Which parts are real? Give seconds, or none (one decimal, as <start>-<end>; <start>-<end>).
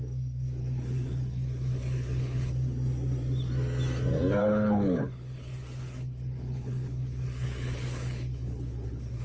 0.0-0.6; 2.5-4.4